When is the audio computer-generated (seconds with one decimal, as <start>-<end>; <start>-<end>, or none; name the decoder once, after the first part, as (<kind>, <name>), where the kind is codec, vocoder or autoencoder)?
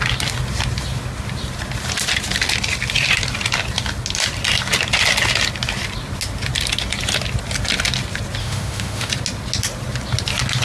8.4-9.1 (autoencoder, DAC-VAE)